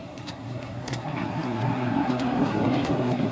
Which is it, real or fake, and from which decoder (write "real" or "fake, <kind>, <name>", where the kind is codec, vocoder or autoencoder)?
fake, codec, SNAC